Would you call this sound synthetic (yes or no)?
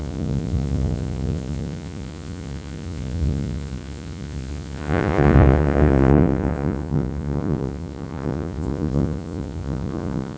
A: yes